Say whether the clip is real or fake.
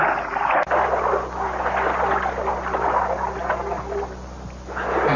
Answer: real